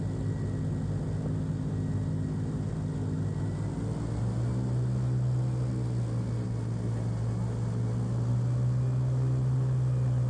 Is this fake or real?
real